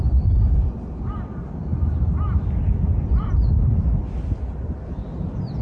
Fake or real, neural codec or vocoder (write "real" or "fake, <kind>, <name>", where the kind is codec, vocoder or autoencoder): real